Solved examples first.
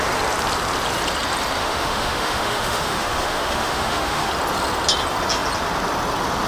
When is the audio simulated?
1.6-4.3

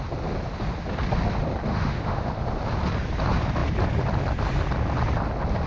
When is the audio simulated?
1.7-2.3

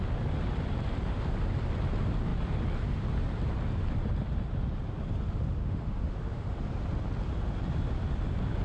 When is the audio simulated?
5.6-6.6

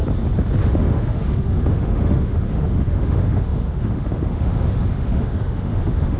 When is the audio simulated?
0.6-6.2

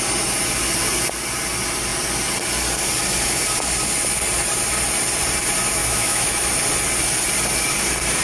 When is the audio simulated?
5.8-6.5

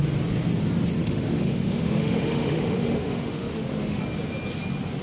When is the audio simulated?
1.0-4.0